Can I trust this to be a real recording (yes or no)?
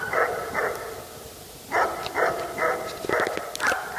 yes